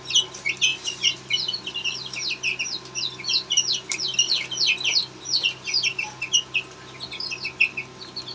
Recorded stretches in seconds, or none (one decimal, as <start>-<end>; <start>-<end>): 0.0-8.3